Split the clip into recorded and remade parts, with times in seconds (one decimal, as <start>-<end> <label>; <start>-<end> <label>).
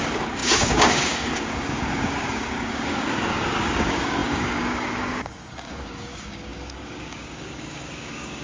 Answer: 0.0-8.4 remade